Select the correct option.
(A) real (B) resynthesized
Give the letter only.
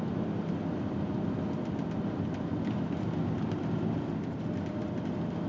A